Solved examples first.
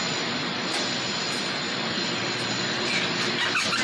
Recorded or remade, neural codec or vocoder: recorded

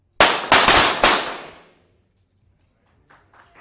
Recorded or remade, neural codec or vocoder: recorded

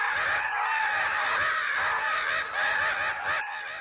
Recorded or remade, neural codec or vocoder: recorded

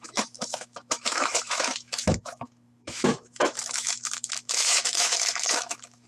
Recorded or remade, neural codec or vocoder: remade, autoencoder, DAC-VAE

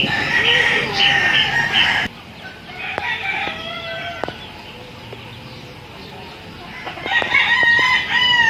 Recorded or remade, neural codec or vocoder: recorded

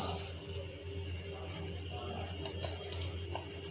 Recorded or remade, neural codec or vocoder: recorded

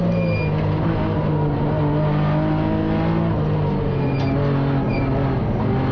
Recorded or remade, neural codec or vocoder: recorded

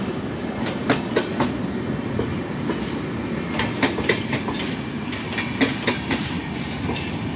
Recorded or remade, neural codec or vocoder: recorded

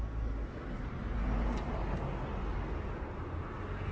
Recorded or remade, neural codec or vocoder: recorded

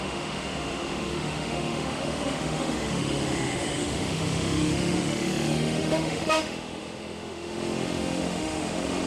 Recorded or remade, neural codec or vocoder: remade, autoencoder, DAC-VAE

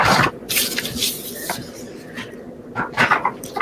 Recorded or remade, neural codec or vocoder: remade, vocoder, BigVGAN v2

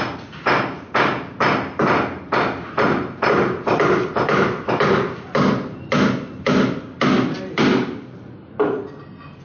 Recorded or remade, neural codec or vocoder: recorded